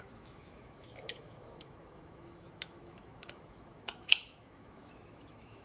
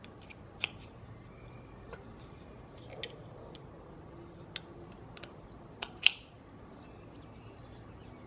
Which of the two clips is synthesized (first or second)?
first